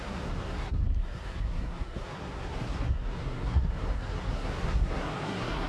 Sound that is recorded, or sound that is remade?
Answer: remade